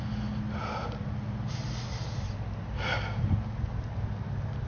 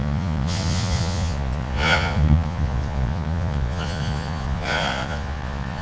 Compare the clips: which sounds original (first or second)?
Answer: first